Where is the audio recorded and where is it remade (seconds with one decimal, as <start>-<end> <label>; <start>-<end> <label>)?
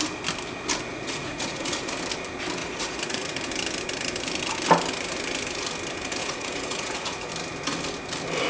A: 0.0-0.9 recorded; 0.9-1.7 remade; 1.7-2.6 recorded; 2.6-3.3 remade; 3.3-6.2 recorded; 6.2-7.3 remade; 7.3-8.5 recorded